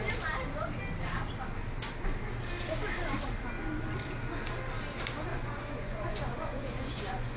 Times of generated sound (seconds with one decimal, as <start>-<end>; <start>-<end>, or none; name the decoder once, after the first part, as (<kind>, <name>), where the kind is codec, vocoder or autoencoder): 5.3-7.4 (vocoder, Vocos)